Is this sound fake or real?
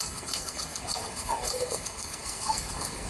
fake